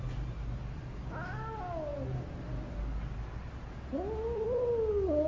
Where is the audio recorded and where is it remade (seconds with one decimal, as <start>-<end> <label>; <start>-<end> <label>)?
0.0-5.3 recorded